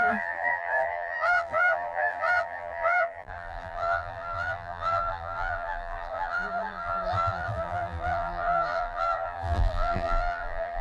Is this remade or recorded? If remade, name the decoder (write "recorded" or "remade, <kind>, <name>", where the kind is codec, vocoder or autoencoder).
remade, vocoder, BigVGAN v2